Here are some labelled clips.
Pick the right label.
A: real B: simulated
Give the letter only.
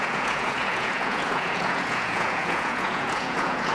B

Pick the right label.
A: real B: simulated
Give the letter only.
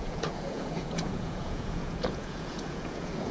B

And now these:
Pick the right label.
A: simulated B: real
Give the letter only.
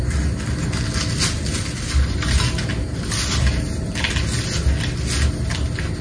B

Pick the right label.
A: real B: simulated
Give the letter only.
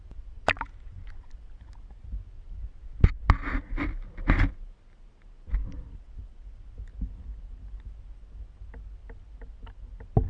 A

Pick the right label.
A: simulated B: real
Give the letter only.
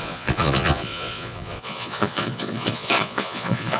A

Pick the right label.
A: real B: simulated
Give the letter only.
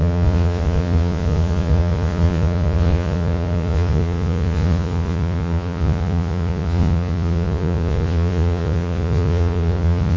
B